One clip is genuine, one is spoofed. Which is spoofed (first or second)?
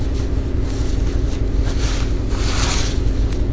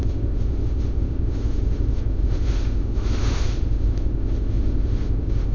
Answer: second